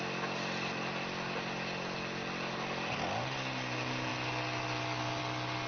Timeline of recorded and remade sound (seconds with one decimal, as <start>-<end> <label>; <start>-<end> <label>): 0.0-5.7 recorded